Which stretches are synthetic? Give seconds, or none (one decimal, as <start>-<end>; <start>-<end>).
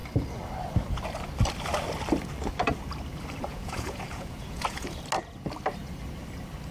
3.5-5.0